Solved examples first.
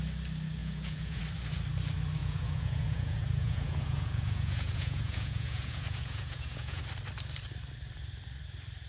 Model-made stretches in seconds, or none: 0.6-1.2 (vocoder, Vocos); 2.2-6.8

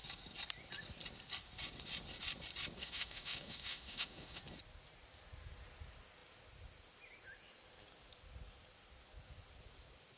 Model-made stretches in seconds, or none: 2.8-4.4 (autoencoder, DAC-VAE)

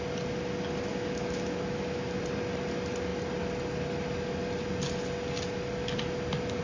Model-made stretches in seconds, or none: 0.9-2.2 (autoencoder, DAC-VAE)

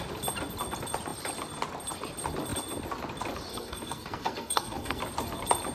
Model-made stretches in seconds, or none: 3.5-5.0 (codec, SNAC)

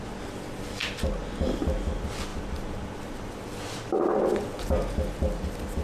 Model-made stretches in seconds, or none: none